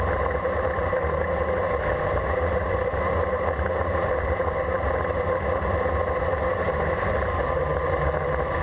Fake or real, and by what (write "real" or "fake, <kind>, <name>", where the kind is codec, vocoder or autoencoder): real